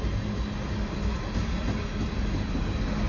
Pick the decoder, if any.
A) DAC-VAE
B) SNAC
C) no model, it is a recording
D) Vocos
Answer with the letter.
C